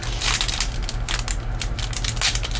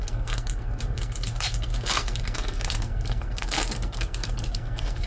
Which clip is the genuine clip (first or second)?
first